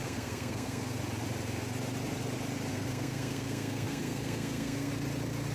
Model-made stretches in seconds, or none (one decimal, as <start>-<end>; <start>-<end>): 0.0-1.0; 2.7-4.9